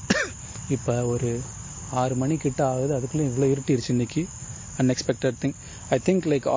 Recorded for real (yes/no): yes